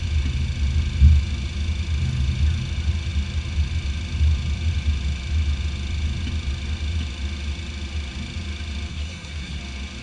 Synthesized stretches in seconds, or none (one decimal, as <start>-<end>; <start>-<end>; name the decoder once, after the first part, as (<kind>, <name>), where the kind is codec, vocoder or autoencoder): 8.9-9.6 (codec, SNAC)